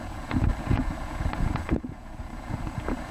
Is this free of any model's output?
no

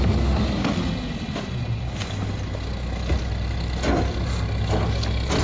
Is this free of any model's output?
yes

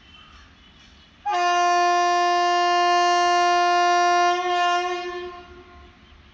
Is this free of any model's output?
yes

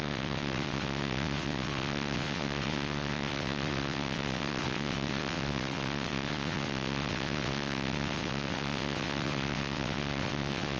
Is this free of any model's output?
no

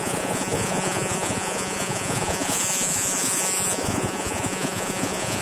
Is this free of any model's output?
no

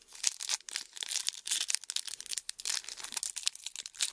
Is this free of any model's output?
yes